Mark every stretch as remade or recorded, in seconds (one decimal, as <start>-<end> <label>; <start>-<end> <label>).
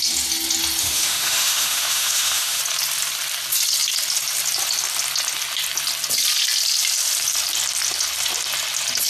0.0-0.8 recorded; 0.8-2.6 remade; 2.6-9.1 recorded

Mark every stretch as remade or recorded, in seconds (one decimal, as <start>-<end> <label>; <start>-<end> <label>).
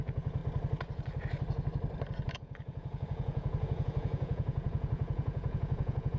0.0-0.4 remade; 0.4-2.3 recorded; 2.3-6.2 remade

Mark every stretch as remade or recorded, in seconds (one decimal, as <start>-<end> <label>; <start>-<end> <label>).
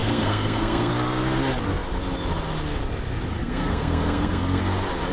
0.0-0.9 remade; 0.9-3.4 recorded; 3.4-4.6 remade; 4.6-5.1 recorded